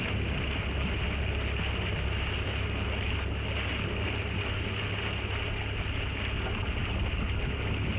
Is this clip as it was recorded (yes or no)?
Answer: yes